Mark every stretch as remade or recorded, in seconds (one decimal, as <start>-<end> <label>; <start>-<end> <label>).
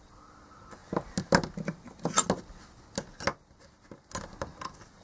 0.0-5.0 recorded